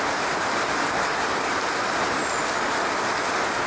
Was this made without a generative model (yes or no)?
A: yes